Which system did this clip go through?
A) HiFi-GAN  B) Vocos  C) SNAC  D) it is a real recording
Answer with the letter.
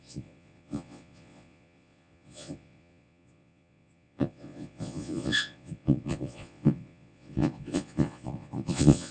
B